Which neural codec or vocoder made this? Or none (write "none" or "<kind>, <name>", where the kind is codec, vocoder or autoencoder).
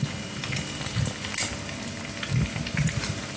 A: none